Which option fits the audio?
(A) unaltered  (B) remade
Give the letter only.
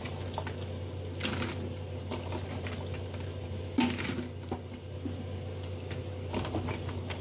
A